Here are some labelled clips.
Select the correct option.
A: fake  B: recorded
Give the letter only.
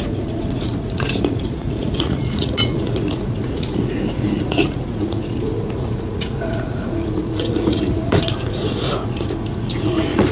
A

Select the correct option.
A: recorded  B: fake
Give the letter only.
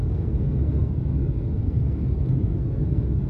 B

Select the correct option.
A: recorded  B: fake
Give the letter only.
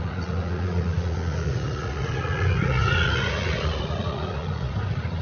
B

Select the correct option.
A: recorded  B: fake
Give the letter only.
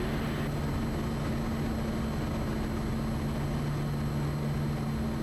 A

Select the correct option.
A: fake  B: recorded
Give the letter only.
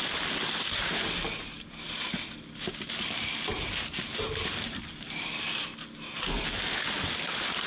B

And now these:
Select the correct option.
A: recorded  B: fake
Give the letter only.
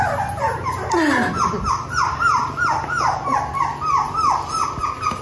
A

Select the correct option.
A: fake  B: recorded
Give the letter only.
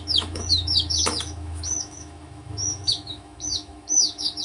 A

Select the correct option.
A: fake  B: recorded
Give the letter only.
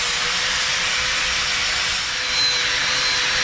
B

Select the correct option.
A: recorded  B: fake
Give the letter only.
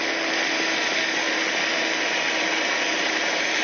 A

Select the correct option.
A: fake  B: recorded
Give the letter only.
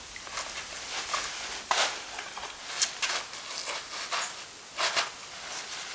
B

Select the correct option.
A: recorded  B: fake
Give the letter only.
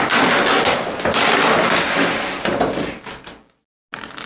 A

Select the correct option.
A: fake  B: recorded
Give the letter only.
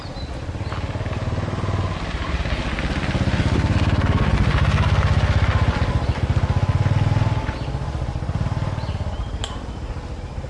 B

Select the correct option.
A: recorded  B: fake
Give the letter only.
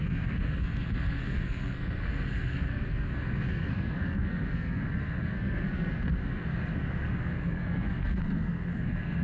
B